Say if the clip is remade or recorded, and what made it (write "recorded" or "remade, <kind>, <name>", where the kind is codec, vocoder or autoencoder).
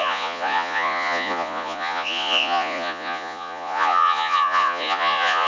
remade, vocoder, Vocos